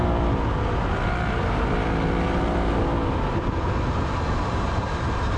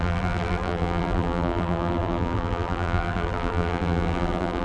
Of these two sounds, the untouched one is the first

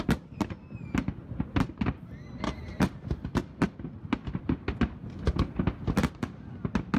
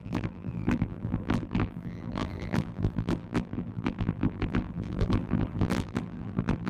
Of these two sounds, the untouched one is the first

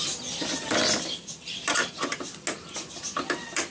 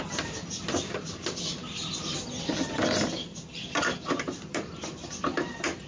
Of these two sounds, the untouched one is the first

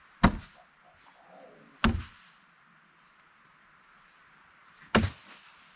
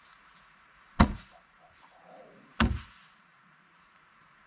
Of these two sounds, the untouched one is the first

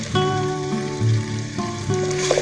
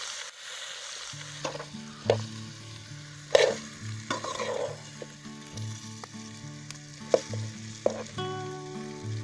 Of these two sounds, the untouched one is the second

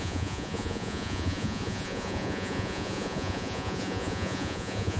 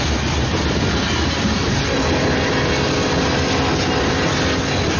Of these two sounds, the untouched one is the second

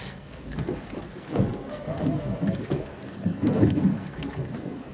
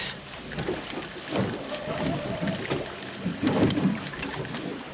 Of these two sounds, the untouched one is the second